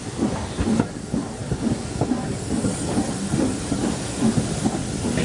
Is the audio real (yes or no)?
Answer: yes